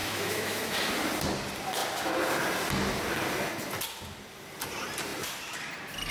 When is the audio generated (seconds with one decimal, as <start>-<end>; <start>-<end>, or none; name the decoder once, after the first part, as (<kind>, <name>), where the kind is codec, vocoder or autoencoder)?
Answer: 0.0-0.9 (autoencoder, DAC-VAE)

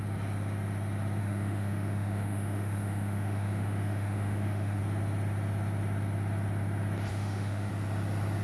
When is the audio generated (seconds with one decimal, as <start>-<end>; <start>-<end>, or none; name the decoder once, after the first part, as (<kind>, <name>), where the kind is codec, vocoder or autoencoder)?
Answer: 1.2-4.8 (autoencoder, DAC-VAE); 7.1-7.7

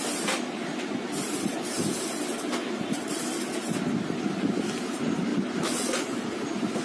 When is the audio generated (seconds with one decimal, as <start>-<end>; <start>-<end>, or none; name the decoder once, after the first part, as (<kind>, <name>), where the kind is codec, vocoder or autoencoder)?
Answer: none

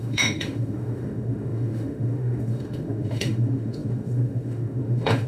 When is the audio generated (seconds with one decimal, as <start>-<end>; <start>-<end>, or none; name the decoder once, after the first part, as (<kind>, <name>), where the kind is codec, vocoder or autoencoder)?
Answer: 0.0-5.3 (autoencoder, DAC-VAE)

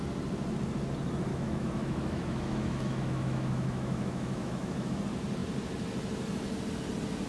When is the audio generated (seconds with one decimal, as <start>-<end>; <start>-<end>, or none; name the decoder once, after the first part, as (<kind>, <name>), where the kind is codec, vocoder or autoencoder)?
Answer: 1.3-4.9 (autoencoder, DAC-VAE)